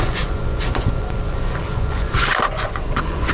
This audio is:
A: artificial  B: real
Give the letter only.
A